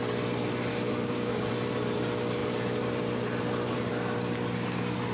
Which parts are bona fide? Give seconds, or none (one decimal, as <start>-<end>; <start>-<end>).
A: 0.0-0.7; 1.5-5.1